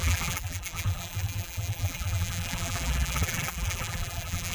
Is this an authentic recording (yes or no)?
no